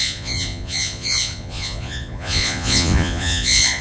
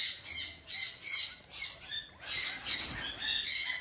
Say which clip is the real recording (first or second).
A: second